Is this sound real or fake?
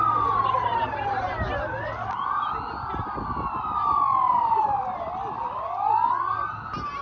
real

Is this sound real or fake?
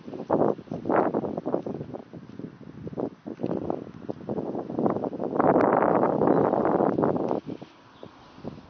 real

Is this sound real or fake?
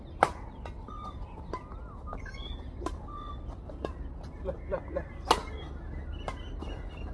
real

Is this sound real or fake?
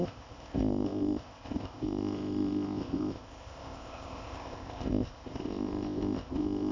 fake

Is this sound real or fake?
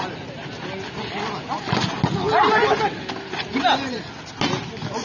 real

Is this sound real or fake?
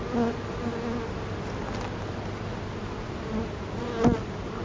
real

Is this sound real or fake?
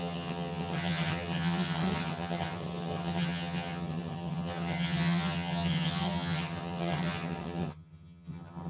fake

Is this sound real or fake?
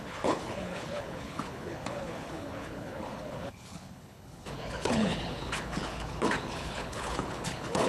fake